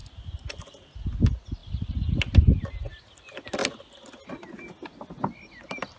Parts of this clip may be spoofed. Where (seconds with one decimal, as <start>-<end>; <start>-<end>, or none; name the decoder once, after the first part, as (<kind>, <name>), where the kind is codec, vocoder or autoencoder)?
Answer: none